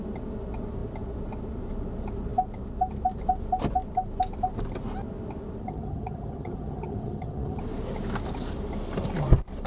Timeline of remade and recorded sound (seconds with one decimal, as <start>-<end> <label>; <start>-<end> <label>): 0.0-5.6 recorded; 5.6-7.6 remade; 7.6-9.7 recorded